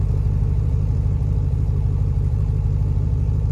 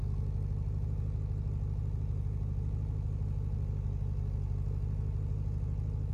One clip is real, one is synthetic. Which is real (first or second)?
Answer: second